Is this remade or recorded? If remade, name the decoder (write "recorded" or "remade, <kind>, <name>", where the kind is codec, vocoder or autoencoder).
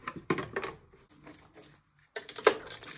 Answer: recorded